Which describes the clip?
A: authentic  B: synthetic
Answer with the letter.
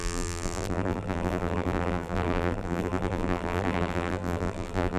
B